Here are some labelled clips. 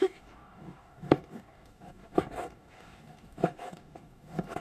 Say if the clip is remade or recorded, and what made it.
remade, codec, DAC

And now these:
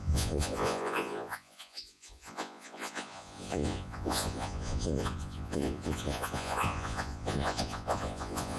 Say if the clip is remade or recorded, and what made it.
remade, vocoder, Vocos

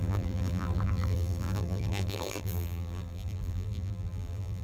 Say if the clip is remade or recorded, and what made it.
remade, vocoder, BigVGAN v2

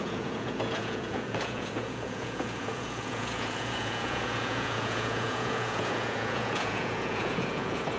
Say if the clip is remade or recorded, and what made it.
remade, vocoder, Vocos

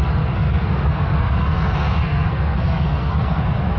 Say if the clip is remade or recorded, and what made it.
remade, codec, SNAC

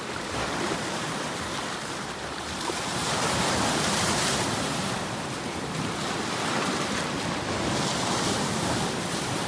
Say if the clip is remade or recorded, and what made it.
remade, vocoder, BigVGAN v2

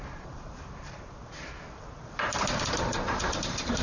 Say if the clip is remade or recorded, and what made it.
remade, vocoder, BigVGAN v2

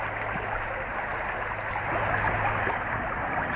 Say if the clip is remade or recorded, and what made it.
recorded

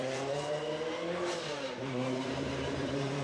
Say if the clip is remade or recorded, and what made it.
remade, vocoder, BigVGAN v2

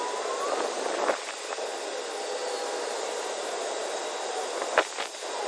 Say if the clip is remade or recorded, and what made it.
recorded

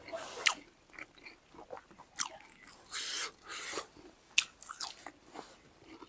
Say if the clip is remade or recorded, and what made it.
recorded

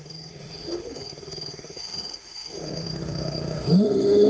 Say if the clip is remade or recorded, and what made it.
remade, autoencoder, DAC-VAE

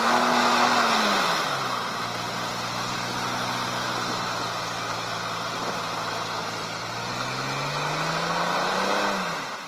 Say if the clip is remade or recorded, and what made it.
recorded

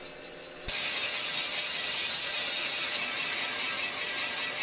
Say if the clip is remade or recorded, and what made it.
recorded